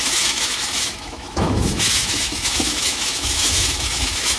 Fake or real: fake